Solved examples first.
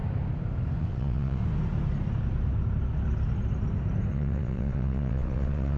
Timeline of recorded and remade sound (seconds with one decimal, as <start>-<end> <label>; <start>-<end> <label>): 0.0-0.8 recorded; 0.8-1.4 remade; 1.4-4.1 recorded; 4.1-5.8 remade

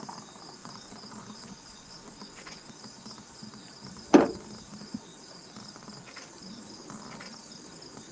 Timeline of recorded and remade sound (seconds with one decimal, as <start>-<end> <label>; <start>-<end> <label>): 0.0-0.6 recorded; 0.6-2.7 remade; 2.7-8.1 recorded

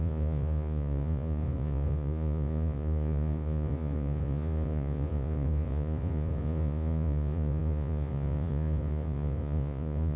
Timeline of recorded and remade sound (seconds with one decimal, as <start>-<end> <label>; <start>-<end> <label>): 0.0-10.2 remade

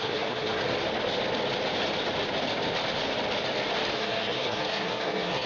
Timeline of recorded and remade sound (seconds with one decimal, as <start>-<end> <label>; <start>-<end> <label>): 0.0-0.6 remade; 0.6-3.9 recorded; 3.9-5.5 remade